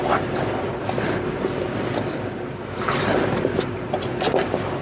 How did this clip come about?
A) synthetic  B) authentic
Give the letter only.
B